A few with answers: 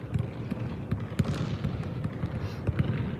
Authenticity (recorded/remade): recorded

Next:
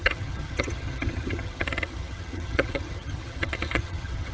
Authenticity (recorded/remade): remade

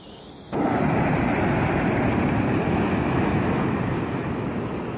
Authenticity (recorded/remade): recorded